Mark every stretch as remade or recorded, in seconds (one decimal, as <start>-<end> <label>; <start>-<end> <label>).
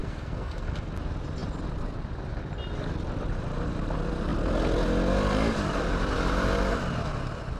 0.0-0.9 remade; 0.9-7.6 recorded